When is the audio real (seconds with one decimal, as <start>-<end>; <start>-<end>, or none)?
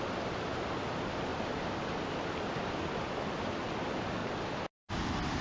0.0-1.3; 2.0-4.2; 4.9-5.4